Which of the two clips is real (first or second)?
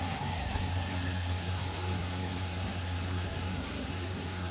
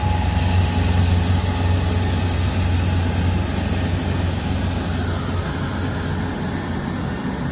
second